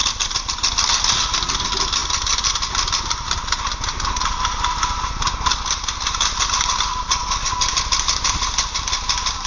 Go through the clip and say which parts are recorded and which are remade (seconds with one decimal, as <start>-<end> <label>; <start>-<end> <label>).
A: 0.0-9.5 recorded